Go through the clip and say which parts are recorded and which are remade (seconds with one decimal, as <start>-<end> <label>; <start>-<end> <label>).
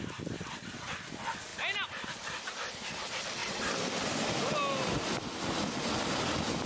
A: 0.0-3.4 recorded; 3.4-4.2 remade; 4.2-6.7 recorded